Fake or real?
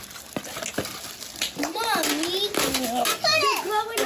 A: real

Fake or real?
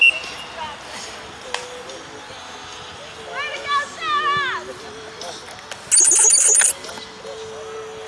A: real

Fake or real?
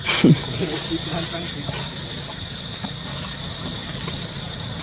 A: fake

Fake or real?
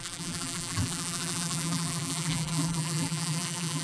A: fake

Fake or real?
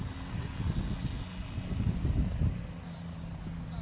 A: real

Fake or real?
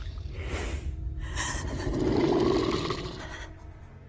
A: real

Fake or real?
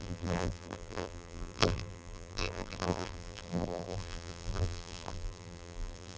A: fake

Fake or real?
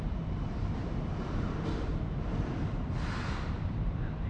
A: fake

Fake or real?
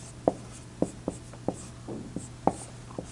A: real